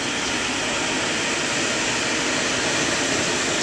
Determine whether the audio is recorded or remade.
recorded